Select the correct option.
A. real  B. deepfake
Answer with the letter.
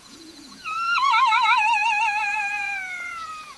B